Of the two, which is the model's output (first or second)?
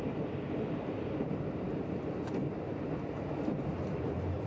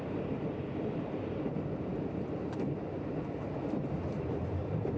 second